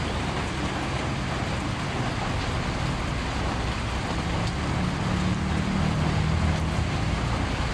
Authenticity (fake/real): real